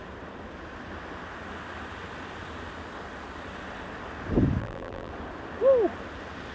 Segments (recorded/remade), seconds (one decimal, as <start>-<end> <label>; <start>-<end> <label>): 0.0-4.6 recorded; 4.6-5.1 remade; 5.1-6.5 recorded